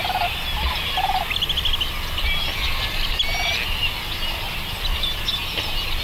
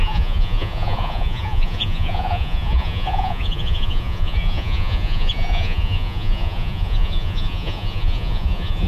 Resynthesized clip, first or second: second